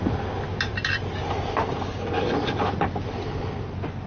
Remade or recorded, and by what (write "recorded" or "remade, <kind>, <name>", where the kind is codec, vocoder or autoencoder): recorded